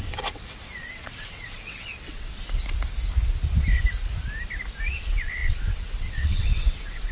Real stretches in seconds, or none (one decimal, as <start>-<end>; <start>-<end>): 2.3-4.9